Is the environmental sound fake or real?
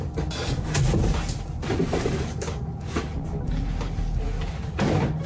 real